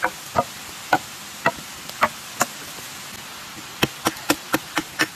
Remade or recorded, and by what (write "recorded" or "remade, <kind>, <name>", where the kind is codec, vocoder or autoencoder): recorded